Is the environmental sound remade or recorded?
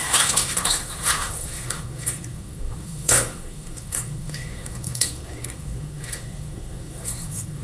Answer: remade